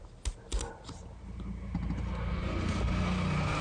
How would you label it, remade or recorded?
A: recorded